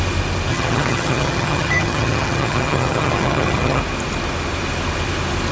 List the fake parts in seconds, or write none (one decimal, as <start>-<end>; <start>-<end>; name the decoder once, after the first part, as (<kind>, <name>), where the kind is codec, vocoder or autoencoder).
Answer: 0.5-3.8 (vocoder, HiFi-GAN)